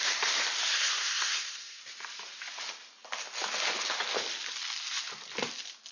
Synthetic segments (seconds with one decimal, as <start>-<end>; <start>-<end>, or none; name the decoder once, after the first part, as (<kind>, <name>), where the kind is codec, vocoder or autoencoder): 0.7-1.8 (codec, SNAC)